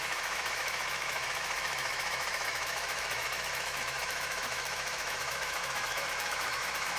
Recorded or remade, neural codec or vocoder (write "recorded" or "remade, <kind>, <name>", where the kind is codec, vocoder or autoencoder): remade, autoencoder, DAC-VAE